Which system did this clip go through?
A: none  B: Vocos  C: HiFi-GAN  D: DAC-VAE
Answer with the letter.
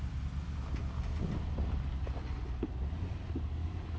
A